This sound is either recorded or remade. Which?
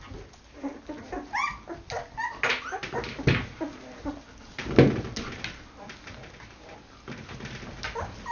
recorded